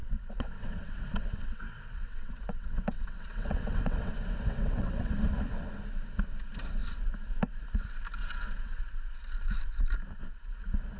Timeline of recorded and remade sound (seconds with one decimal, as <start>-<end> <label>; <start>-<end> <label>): 0.0-5.1 remade; 5.1-8.2 recorded; 8.2-8.8 remade; 8.8-11.0 recorded